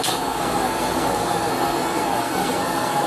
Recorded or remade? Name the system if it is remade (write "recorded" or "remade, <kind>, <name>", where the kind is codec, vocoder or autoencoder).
remade, codec, SNAC